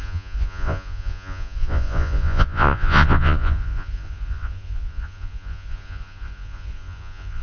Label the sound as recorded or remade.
remade